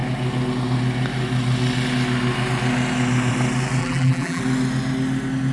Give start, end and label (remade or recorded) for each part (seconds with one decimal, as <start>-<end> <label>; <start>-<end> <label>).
0.0-3.8 recorded; 3.8-4.4 remade; 4.4-5.5 recorded